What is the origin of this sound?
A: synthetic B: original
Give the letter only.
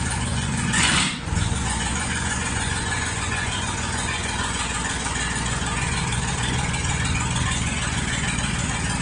A